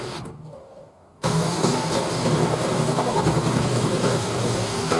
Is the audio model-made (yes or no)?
yes